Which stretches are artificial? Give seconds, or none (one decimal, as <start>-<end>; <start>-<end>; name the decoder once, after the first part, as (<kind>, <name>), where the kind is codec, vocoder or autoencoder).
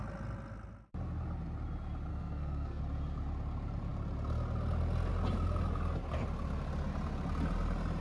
2.1-2.8 (codec, SNAC)